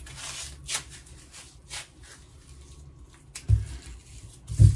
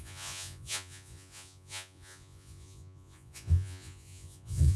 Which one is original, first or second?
first